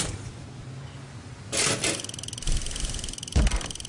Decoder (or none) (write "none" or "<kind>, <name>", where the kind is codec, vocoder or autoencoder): none